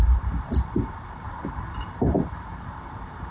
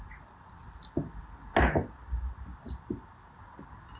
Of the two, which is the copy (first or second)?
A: first